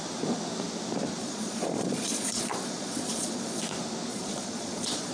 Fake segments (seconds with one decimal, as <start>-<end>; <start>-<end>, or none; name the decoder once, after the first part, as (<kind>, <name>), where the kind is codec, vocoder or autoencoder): 1.2-3.6 (vocoder, Vocos); 4.1-5.1